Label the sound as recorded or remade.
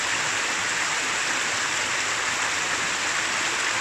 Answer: recorded